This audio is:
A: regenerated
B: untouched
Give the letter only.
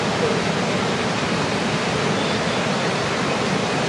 B